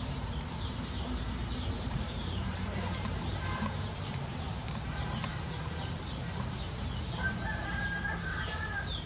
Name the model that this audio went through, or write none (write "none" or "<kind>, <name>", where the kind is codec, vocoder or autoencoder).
vocoder, BigVGAN v2